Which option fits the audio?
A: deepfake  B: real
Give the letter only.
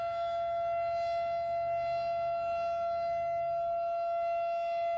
B